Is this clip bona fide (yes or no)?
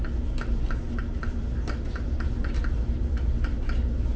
yes